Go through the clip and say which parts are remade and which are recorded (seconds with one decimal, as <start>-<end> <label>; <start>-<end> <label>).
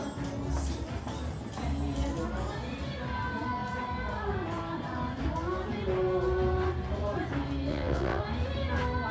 0.0-7.7 recorded; 7.7-8.2 remade; 8.2-9.1 recorded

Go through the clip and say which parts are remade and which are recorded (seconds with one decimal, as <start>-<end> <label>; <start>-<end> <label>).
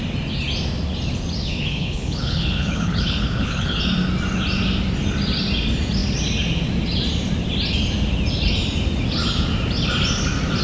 0.0-1.4 recorded; 1.4-3.8 remade; 3.8-10.6 recorded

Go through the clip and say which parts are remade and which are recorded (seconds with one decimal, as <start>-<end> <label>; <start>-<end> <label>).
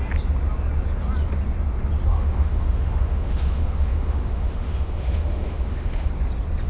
0.0-2.1 recorded; 2.1-6.1 remade; 6.1-6.7 recorded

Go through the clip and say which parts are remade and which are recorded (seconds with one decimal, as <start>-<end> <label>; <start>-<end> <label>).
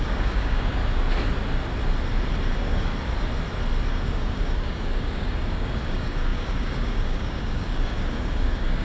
0.0-0.8 remade; 0.8-2.5 recorded; 2.5-2.9 remade; 2.9-3.9 recorded; 3.9-8.8 remade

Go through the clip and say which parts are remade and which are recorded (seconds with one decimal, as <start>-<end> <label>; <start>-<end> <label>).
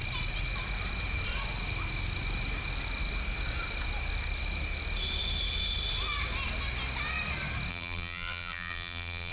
0.0-7.7 recorded; 7.7-9.3 remade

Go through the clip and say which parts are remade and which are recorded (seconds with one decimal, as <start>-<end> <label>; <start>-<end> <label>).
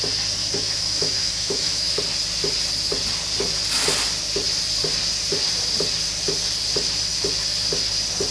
0.0-0.4 recorded; 0.4-2.0 remade; 2.0-8.3 recorded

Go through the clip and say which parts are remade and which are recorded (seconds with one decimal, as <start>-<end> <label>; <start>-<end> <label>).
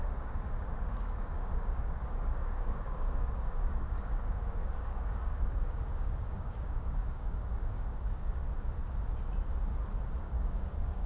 0.0-8.4 remade; 8.4-10.2 recorded; 10.2-11.1 remade